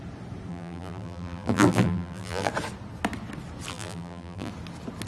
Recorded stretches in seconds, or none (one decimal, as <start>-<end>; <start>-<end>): 0.0-0.5; 2.5-3.7; 4.5-5.1